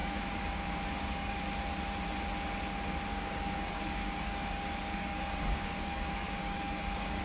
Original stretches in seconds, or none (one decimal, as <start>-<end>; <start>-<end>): 1.4-3.1